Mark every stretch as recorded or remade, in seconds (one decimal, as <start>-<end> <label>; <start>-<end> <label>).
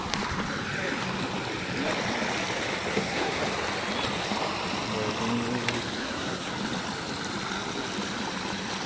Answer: 0.0-2.9 recorded; 2.9-3.4 remade; 3.4-6.0 recorded; 6.0-6.5 remade; 6.5-8.9 recorded